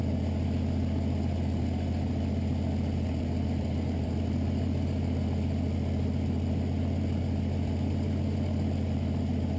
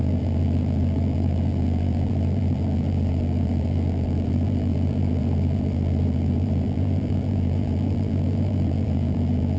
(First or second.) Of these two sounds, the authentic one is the first